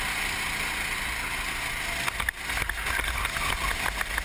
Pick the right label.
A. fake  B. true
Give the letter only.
B